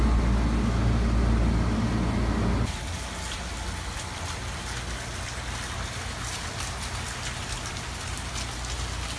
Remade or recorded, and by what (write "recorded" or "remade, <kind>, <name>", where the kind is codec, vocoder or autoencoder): recorded